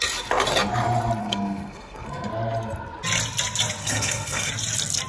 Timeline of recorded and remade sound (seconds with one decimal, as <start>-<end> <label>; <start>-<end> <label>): 0.0-1.2 recorded; 1.2-2.3 remade; 2.3-3.8 recorded; 3.8-4.5 remade; 4.5-5.1 recorded

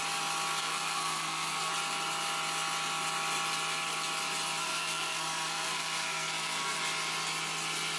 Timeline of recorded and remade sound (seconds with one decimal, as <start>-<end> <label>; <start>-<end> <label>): 0.0-0.6 recorded; 0.6-1.7 remade; 1.7-4.6 recorded; 4.6-6.8 remade; 6.8-8.0 recorded